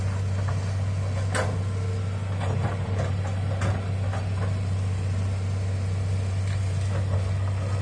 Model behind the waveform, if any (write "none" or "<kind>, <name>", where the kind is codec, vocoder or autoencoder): none